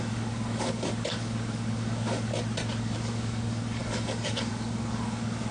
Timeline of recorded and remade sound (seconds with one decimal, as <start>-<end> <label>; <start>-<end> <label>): 0.0-2.3 remade; 2.3-2.8 recorded; 2.8-5.5 remade